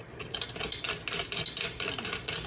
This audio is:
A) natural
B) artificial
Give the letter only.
A